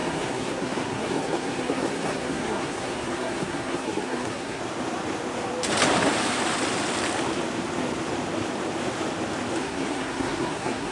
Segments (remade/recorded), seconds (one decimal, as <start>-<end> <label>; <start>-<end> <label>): 0.0-4.6 remade; 4.6-9.6 recorded; 9.6-10.9 remade

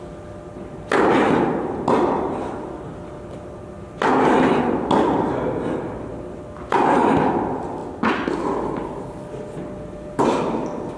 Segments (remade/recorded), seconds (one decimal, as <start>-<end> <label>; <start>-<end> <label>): 0.0-11.0 recorded

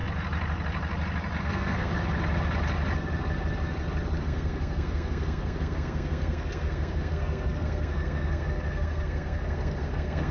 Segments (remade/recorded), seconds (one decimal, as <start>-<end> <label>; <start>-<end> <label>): 0.0-1.4 recorded; 1.4-1.9 remade; 1.9-4.2 recorded; 4.2-10.3 remade

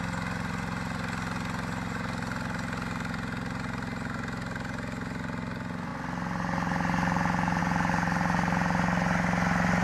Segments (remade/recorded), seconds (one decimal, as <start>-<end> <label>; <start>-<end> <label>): 0.0-9.8 recorded

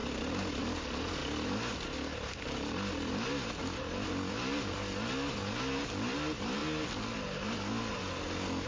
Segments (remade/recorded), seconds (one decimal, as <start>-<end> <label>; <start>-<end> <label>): 0.0-8.7 recorded

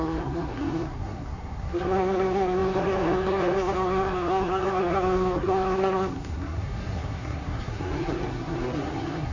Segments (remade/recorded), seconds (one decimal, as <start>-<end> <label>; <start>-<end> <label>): 0.0-9.3 remade

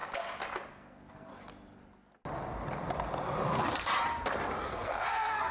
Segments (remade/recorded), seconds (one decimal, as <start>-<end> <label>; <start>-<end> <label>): 0.0-0.7 recorded; 0.7-1.3 remade; 1.3-4.6 recorded; 4.6-5.5 remade